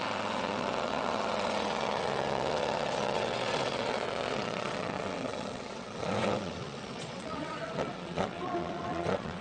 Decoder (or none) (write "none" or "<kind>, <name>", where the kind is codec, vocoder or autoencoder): vocoder, WaveNeXt